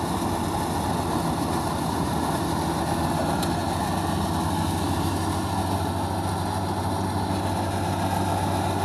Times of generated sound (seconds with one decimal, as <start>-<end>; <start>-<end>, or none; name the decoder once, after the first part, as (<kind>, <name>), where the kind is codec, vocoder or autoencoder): none